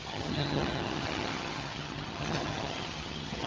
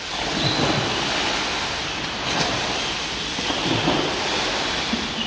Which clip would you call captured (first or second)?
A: second